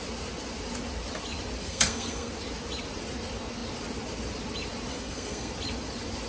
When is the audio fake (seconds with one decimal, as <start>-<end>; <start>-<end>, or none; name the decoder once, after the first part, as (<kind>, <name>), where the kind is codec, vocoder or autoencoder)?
1.6-2.3 (codec, SNAC); 4.9-5.5